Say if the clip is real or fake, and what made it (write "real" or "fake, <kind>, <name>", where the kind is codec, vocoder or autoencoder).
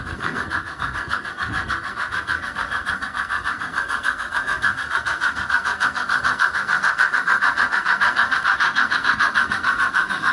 fake, codec, SNAC